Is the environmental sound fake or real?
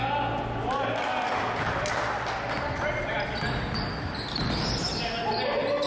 real